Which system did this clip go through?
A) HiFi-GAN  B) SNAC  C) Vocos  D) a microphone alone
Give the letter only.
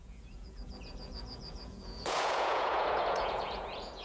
C